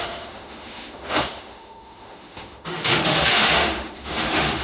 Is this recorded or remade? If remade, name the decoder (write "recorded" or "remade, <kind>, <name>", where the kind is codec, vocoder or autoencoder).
remade, autoencoder, DAC-VAE